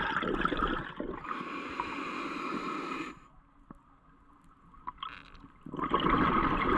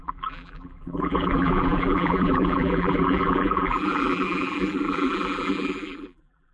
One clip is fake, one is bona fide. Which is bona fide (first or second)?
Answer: first